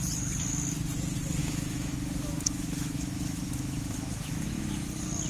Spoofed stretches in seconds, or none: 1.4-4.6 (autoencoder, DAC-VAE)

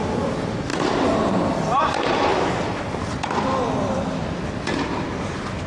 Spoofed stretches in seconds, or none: 0.7-1.8 (vocoder, BigVGAN v2); 2.3-2.9

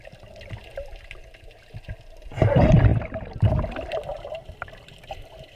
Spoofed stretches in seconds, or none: none

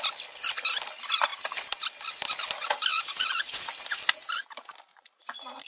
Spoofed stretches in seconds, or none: 2.9-3.7 (vocoder, Vocos); 4.9-5.7